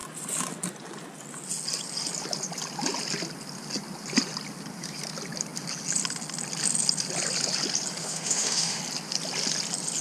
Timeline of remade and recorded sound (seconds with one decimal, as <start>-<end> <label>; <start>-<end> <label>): 0.0-8.0 recorded; 8.0-8.8 remade; 8.8-10.0 recorded